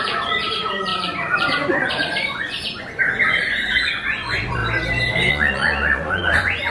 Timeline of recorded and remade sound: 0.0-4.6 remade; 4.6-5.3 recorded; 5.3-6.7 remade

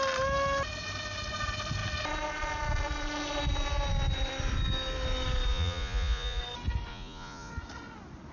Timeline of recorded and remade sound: 0.0-5.5 recorded; 5.5-6.4 remade; 6.4-6.9 recorded; 6.9-7.5 remade; 7.5-8.3 recorded